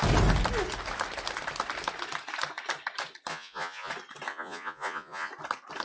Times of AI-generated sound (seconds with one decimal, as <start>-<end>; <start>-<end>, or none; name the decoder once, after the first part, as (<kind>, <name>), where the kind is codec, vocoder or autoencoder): 3.3-3.9 (vocoder, Vocos); 4.3-5.3